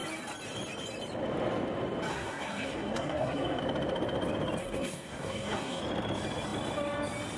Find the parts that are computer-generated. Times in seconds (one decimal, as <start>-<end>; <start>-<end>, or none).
2.1-3.6; 4.6-5.8